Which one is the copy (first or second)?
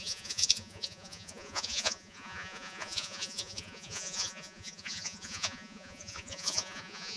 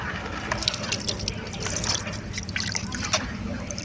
first